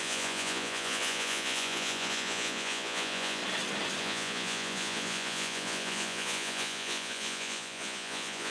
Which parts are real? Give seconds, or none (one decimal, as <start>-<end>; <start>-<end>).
3.4-4.0